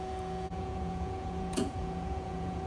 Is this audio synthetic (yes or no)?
yes